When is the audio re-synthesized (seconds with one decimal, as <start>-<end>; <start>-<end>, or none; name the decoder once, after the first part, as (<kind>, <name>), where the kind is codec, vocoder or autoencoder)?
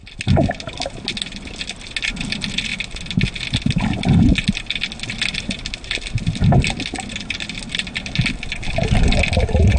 none